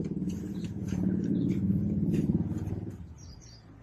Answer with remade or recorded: remade